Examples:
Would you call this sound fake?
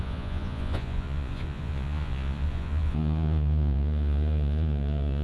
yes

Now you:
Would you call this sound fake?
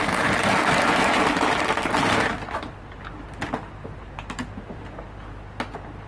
no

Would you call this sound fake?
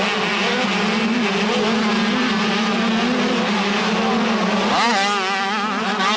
no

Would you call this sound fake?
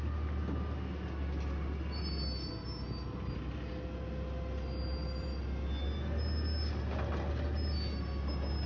no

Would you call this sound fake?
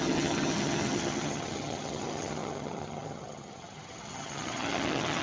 yes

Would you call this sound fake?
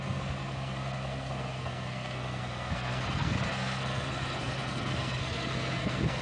yes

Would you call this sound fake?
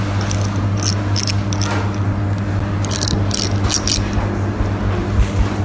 no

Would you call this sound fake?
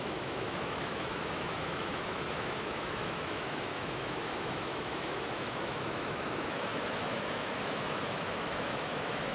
yes